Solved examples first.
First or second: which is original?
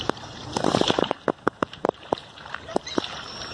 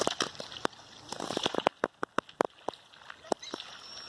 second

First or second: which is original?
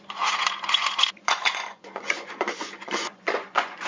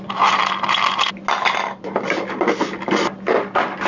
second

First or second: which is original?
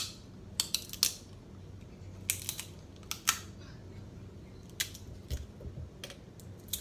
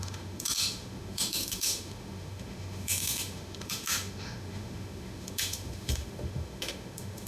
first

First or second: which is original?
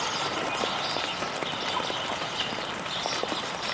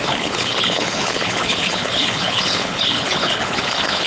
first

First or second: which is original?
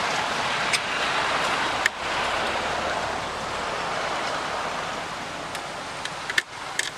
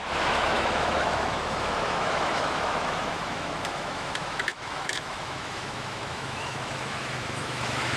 first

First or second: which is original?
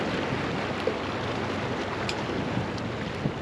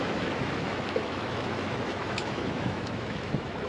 first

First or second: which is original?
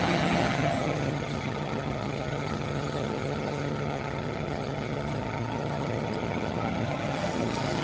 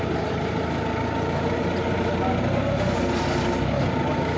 second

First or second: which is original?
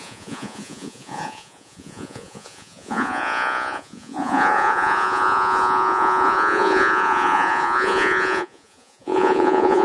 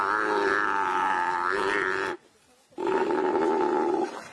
second